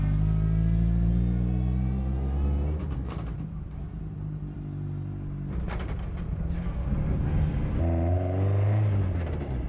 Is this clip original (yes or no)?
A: yes